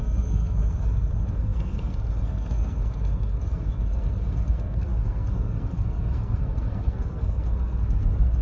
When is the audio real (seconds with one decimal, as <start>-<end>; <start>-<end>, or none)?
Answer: none